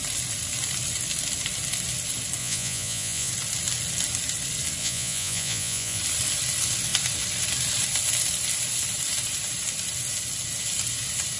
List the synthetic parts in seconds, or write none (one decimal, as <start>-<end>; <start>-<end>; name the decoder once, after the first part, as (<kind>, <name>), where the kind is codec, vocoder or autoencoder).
2.4-3.3 (vocoder, Vocos); 4.8-6.0